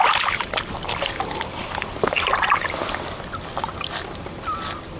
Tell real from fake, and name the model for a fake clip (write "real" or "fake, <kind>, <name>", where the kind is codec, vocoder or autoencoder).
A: real